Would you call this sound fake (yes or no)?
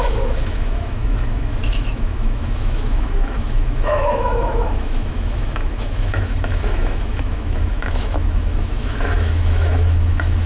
yes